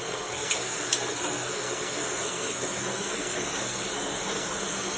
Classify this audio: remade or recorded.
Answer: remade